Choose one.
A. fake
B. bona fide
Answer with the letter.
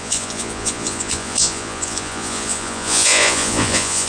A